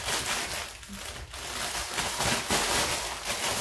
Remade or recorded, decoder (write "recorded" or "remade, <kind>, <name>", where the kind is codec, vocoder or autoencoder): recorded